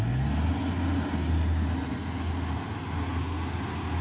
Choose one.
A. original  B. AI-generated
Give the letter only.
A